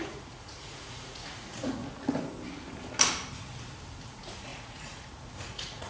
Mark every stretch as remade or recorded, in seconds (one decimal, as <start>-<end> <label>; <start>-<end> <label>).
0.0-1.8 remade; 1.8-4.1 recorded; 4.1-5.9 remade

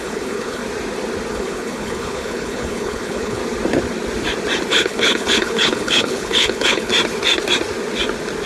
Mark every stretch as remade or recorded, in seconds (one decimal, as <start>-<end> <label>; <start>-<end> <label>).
0.0-0.6 remade; 0.6-1.3 recorded; 1.3-3.4 remade; 3.4-4.7 recorded; 4.7-6.9 remade; 6.9-8.5 recorded

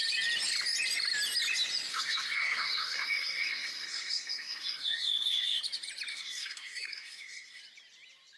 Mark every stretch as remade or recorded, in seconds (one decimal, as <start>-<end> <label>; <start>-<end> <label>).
0.0-1.9 recorded; 1.9-5.6 remade; 5.6-6.1 recorded; 6.1-7.6 remade; 7.6-8.4 recorded

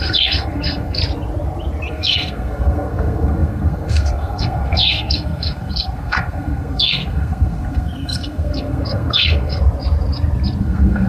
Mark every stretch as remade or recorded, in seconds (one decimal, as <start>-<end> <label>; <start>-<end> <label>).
0.0-1.0 remade; 1.0-1.9 recorded; 1.9-9.6 remade; 9.6-10.6 recorded; 10.6-11.1 remade

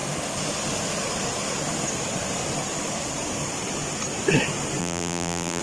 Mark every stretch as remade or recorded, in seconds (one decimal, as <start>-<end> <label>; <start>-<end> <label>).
0.0-4.8 recorded; 4.8-5.6 remade

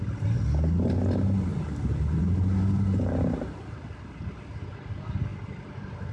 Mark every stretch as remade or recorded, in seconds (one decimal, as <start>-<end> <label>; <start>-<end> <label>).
0.0-1.5 recorded; 1.5-2.2 remade; 2.2-5.3 recorded; 5.3-6.1 remade